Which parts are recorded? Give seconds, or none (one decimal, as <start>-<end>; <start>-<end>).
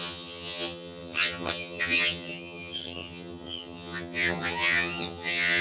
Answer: none